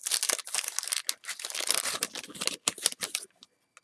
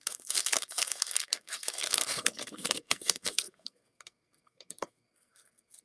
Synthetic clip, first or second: second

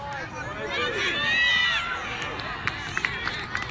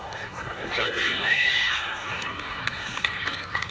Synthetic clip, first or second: second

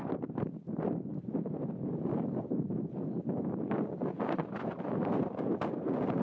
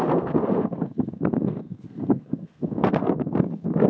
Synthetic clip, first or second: second